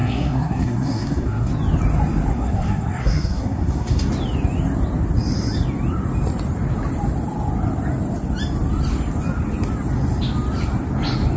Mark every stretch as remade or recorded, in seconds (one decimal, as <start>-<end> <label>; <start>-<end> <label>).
0.0-1.5 remade; 1.5-2.3 recorded; 2.3-4.1 remade; 4.1-11.4 recorded